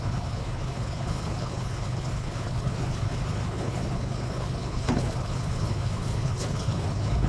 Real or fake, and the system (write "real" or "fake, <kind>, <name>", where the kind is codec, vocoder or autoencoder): fake, codec, HILCodec